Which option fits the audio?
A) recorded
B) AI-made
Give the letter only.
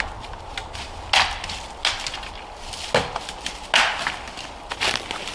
A